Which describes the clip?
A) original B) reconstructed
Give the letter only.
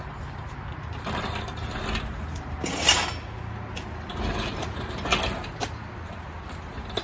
A